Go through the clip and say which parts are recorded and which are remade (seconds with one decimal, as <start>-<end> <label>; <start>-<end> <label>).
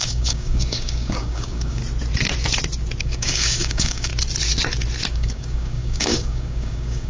0.0-1.8 remade; 1.8-3.0 recorded; 3.0-4.1 remade; 4.1-5.1 recorded; 5.1-7.1 remade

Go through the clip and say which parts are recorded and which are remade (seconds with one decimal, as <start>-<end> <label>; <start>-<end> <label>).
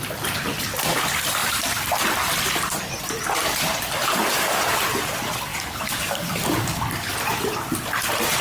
0.0-5.5 recorded; 5.5-6.8 remade; 6.8-8.4 recorded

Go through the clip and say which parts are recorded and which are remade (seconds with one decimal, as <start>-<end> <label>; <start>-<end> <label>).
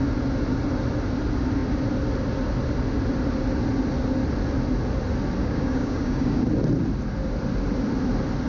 0.0-5.4 recorded; 5.4-6.4 remade; 6.4-8.5 recorded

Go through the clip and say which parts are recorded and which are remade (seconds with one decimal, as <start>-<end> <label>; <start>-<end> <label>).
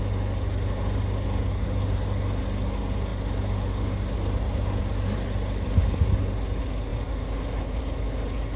0.0-8.6 recorded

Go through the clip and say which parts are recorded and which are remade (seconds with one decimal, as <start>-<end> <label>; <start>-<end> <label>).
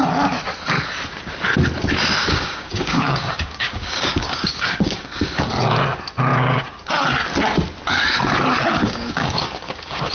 0.0-2.2 recorded; 2.2-5.4 remade; 5.4-8.8 recorded; 8.8-10.1 remade